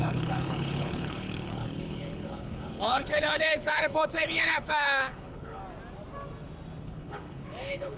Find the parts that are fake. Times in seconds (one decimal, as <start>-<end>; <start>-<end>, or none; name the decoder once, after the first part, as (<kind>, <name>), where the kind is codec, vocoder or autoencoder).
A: 0.0-5.6 (codec, HILCodec); 6.8-8.0

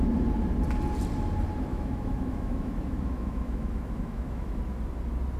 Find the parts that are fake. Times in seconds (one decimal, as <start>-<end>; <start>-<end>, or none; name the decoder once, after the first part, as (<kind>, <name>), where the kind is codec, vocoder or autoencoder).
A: 1.7-4.6 (autoencoder, DAC-VAE)

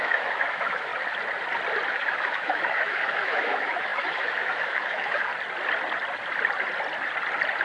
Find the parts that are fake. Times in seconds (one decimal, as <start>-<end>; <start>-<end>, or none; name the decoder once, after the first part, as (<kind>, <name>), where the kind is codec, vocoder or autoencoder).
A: 0.0-0.9 (autoencoder, DAC-VAE); 1.9-5.3